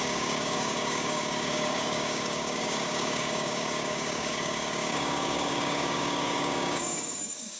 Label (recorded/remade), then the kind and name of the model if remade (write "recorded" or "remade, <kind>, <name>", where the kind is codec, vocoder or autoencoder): remade, codec, DAC